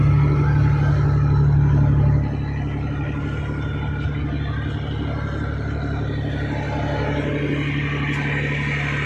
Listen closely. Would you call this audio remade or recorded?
recorded